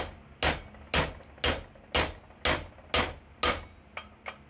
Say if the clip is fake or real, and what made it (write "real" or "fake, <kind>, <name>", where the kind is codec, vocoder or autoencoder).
real